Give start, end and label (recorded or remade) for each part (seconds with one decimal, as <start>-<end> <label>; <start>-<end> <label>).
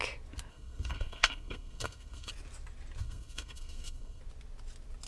0.0-0.5 recorded; 0.5-2.3 remade; 2.3-3.0 recorded; 3.0-4.2 remade; 4.2-5.1 recorded